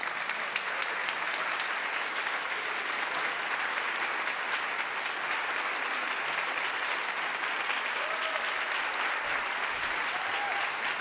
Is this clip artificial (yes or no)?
no